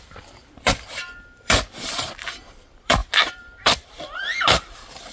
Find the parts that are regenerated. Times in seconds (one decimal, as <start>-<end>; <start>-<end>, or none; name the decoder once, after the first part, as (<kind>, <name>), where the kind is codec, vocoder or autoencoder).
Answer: 0.0-5.1 (vocoder, BigVGAN v2)